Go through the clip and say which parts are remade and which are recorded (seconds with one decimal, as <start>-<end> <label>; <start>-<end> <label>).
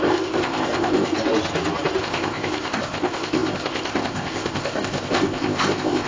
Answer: 0.0-1.1 remade; 1.1-2.0 recorded; 2.0-6.1 remade